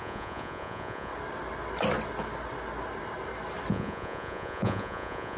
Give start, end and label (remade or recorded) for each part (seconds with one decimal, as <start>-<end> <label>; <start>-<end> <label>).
0.0-1.1 remade; 1.1-3.7 recorded; 3.7-5.4 remade